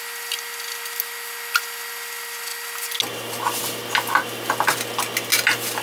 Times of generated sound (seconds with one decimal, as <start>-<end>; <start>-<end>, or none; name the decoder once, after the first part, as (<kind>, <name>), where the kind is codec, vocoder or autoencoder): none